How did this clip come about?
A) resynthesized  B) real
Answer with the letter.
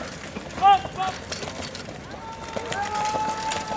B